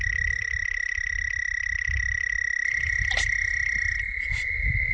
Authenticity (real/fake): real